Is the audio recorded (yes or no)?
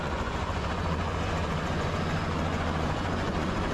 no